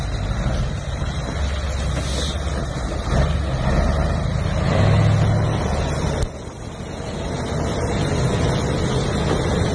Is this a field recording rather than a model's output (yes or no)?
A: yes